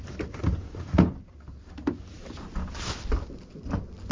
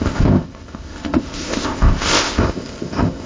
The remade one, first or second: second